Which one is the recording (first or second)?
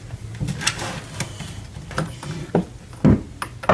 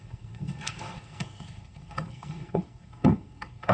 first